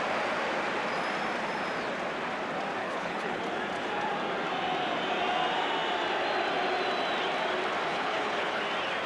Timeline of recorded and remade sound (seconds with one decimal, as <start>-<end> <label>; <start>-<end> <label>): 0.0-2.8 recorded; 2.8-3.4 remade; 3.4-7.9 recorded; 7.9-8.6 remade; 8.6-9.1 recorded